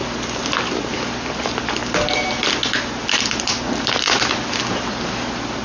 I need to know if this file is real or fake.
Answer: real